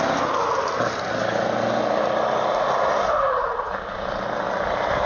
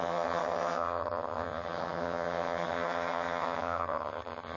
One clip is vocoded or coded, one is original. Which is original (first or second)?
first